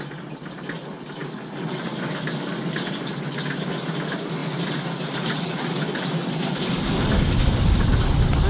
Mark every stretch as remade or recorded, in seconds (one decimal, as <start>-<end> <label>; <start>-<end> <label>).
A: 0.0-8.5 recorded